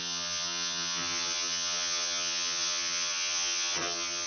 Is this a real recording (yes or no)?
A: no